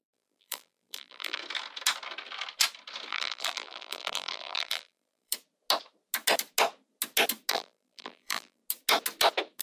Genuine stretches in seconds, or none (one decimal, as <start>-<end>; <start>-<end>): 1.4-3.1; 5.3-7.5; 8.6-9.6